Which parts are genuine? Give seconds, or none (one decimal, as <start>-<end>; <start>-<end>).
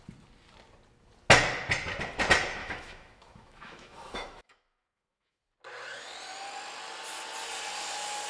0.0-2.6; 5.4-8.3